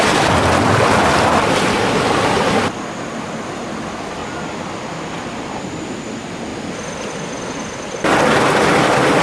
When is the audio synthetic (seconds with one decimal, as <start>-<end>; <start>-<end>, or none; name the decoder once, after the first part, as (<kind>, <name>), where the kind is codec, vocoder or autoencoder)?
none